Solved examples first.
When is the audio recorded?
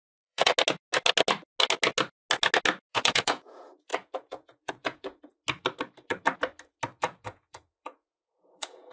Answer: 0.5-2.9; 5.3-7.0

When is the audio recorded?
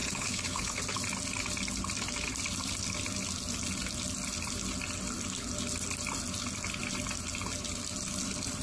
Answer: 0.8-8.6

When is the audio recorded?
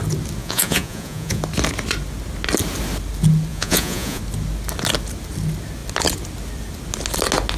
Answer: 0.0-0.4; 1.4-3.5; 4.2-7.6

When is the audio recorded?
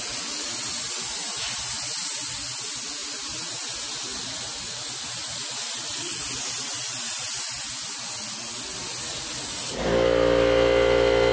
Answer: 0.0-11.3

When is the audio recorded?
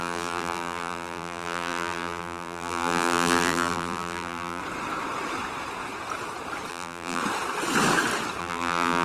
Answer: 4.6-6.7; 7.2-8.4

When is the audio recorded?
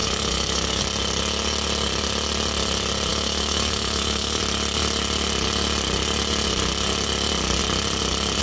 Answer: 0.8-3.1; 4.4-8.4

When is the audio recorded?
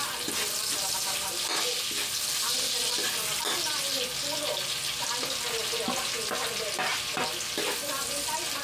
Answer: 0.0-8.6